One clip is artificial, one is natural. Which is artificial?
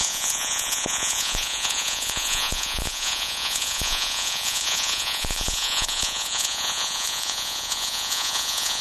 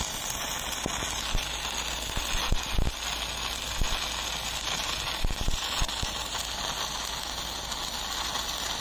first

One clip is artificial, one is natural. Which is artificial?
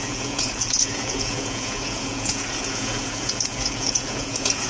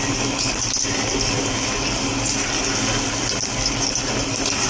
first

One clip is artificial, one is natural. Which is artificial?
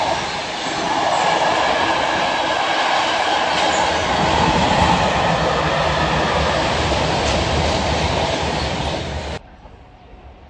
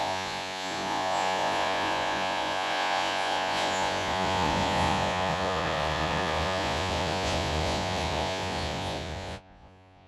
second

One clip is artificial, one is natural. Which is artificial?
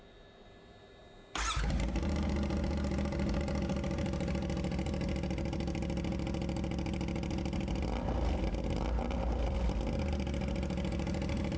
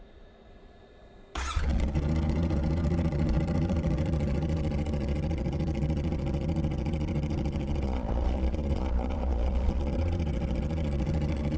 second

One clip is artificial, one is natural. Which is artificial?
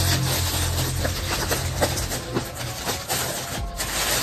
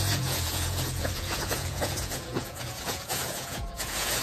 second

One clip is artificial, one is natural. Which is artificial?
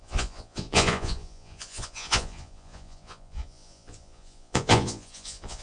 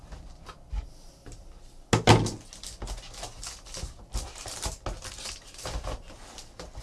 first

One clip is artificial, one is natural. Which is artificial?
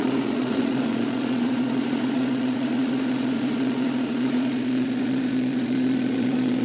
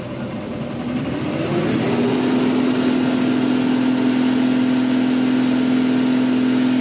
first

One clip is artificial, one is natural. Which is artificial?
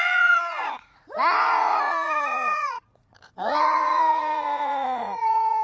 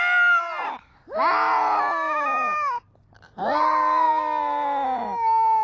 first